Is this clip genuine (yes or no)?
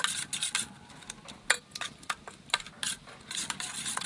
yes